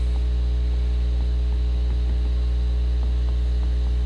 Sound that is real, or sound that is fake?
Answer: real